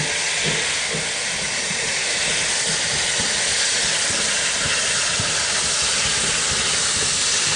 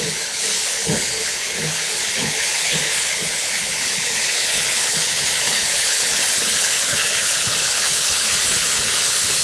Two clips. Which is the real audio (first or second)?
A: first